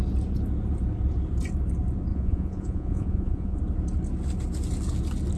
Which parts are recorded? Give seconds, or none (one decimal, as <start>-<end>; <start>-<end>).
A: 0.0-2.1; 3.6-5.4